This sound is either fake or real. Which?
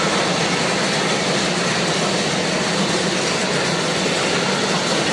real